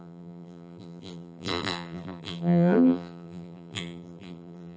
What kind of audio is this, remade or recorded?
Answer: remade